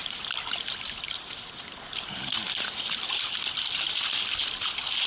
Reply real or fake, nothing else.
real